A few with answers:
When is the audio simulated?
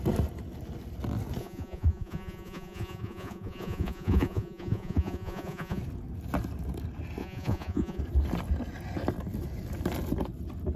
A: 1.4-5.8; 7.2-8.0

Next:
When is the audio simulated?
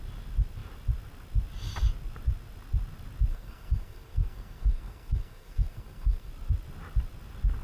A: 3.3-6.3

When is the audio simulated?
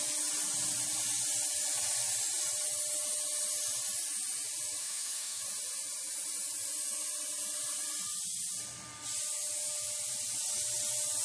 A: 4.8-5.4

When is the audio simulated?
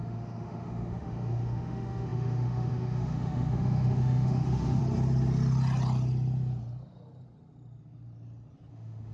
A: 0.0-4.8; 8.7-9.1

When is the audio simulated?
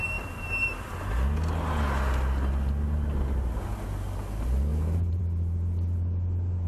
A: 4.7-5.2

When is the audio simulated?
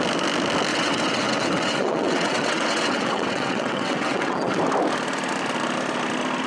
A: 0.7-4.6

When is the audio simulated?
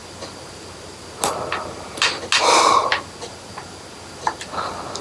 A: none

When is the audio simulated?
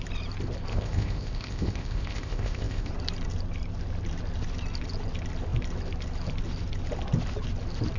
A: 0.7-2.9